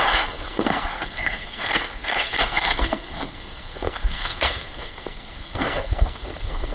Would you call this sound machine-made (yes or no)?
yes